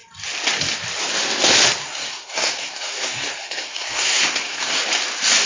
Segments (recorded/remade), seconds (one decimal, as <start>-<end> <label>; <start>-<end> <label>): 0.0-1.8 recorded; 1.8-4.8 remade; 4.8-5.5 recorded